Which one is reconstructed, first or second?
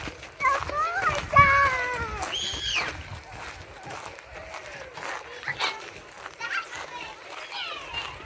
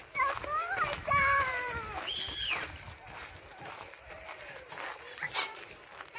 second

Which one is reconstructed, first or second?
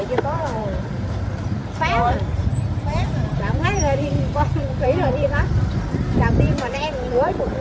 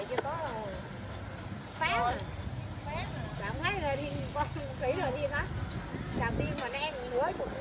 first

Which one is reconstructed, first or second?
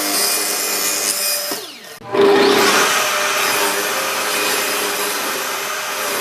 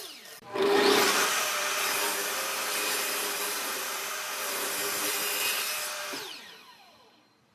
second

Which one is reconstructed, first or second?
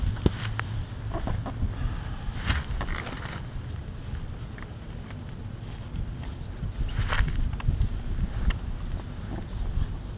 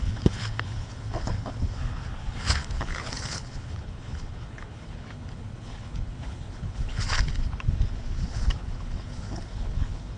second